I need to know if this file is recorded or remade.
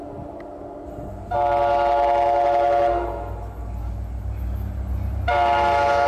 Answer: recorded